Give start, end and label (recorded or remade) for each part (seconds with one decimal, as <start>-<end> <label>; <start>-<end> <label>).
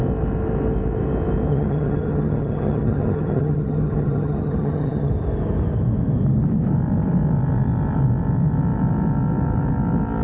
0.0-1.5 recorded; 1.5-5.1 remade; 5.1-10.2 recorded